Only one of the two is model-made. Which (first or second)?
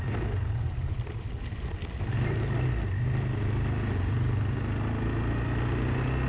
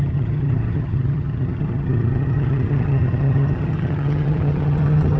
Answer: second